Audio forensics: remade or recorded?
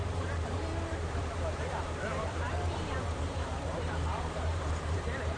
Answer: remade